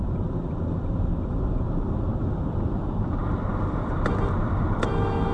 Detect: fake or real fake